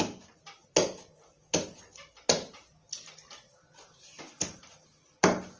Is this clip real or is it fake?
real